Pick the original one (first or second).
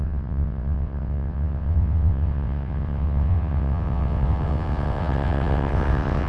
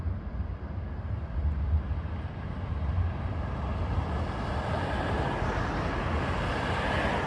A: second